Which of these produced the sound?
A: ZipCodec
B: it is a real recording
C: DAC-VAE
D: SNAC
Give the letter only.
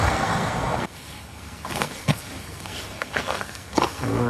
D